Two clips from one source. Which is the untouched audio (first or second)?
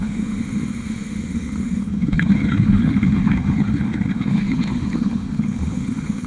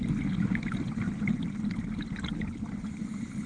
second